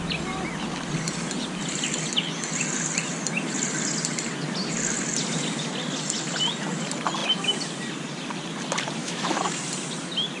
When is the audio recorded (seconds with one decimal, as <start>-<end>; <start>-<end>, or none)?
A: 0.0-9.0; 9.6-10.4